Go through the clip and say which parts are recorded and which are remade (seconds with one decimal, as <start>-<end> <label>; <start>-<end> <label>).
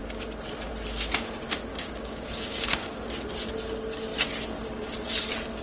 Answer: 0.0-1.7 recorded; 1.7-3.0 remade; 3.0-5.6 recorded